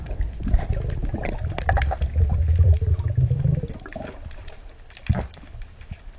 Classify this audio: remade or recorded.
recorded